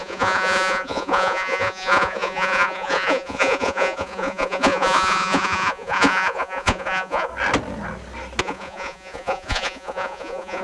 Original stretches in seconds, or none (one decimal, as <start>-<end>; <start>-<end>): 7.3-8.4